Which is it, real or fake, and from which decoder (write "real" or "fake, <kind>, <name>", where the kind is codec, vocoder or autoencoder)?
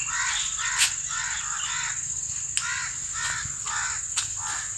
real